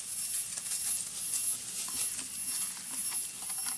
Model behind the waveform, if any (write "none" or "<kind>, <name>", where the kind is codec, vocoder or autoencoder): none